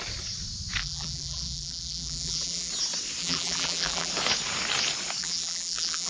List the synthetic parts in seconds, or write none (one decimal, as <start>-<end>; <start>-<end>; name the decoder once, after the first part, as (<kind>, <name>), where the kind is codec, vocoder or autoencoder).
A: 0.8-2.7 (vocoder, BigVGAN v2); 3.2-4.1; 5.2-6.1